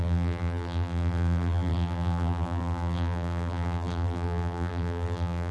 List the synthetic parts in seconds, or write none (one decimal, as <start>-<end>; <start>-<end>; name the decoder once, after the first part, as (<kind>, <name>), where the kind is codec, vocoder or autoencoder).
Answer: 0.0-5.5 (vocoder, BigVGAN v2)